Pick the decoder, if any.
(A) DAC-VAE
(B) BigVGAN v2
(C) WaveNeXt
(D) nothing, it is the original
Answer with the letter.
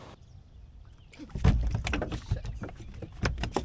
B